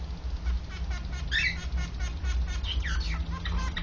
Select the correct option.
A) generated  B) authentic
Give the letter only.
B